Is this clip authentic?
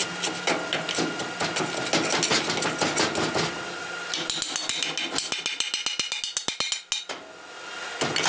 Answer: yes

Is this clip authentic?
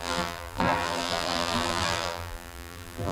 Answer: no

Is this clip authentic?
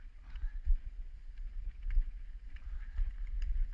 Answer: yes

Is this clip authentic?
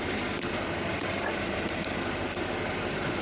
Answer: yes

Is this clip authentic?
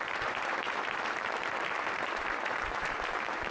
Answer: no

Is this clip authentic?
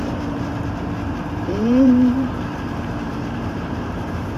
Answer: no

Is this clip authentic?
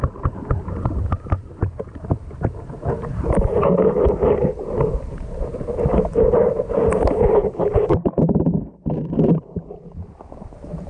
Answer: no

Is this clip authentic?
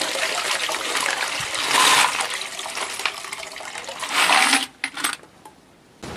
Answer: yes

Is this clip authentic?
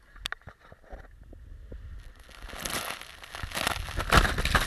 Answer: yes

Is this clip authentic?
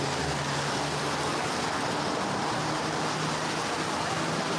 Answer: yes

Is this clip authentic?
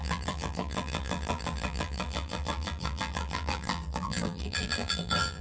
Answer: no